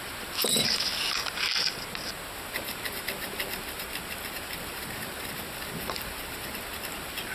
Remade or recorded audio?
remade